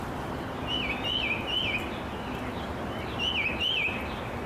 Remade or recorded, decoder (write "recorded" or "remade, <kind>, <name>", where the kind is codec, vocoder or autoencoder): recorded